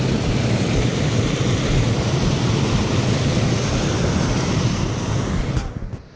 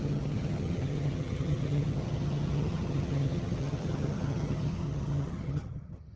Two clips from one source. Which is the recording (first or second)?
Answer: first